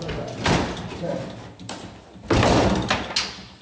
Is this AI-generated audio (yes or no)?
no